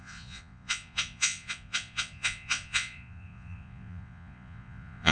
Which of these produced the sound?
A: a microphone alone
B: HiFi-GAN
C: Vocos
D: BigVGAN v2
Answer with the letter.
C